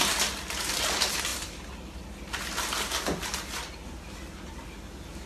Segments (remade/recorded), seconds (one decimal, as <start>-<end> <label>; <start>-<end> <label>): 0.0-5.3 recorded